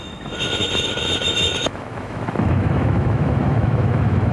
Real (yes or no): no